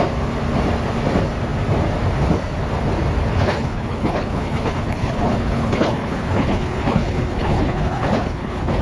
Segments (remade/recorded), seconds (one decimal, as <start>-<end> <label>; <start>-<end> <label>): 0.0-3.3 recorded; 3.3-8.8 remade